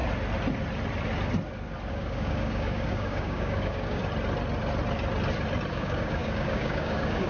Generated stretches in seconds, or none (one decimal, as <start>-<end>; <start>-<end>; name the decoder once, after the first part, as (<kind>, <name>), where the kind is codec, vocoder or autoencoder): 1.9-4.0 (codec, DAC); 5.7-7.3